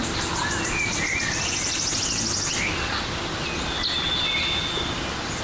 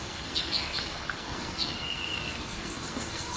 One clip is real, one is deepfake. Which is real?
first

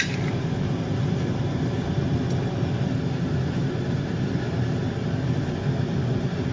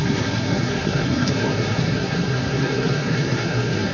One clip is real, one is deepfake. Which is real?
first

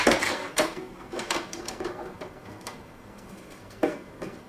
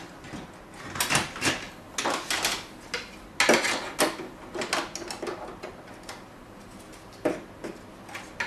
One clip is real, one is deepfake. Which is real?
second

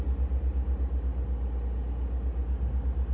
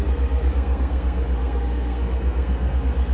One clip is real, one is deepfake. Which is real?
first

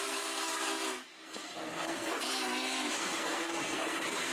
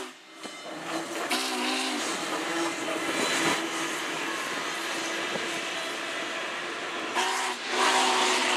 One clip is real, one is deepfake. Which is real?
second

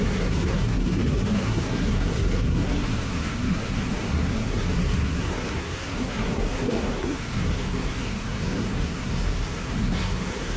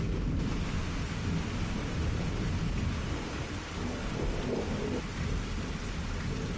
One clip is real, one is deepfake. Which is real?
second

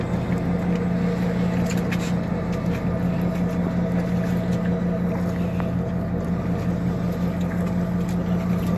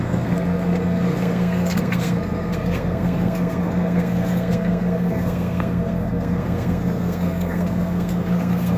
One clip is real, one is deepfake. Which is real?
first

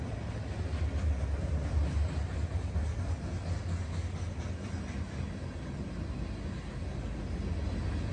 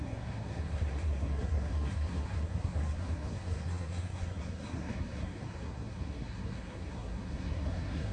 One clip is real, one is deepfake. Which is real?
first